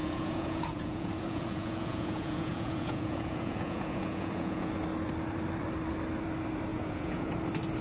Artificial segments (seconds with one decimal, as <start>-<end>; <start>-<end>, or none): 0.0-4.7; 6.7-7.3